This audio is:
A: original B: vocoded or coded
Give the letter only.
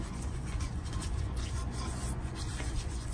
B